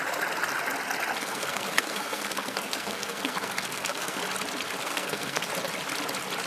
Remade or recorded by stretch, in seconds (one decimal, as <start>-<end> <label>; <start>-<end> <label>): 0.0-1.2 recorded; 1.2-4.2 remade; 4.2-4.8 recorded; 4.8-5.5 remade; 5.5-6.5 recorded